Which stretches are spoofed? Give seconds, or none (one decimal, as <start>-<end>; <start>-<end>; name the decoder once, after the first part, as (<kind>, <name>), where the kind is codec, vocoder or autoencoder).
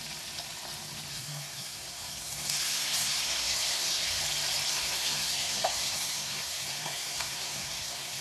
1.1-4.2 (codec, SNAC); 4.7-8.2